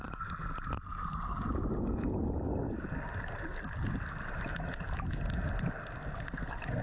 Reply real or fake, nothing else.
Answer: real